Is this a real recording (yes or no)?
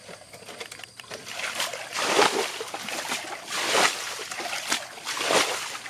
no